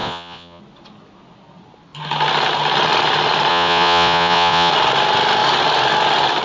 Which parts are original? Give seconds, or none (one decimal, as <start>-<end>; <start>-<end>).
0.6-3.5; 4.7-6.4